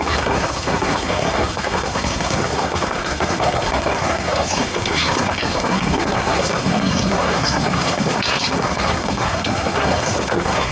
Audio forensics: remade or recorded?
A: remade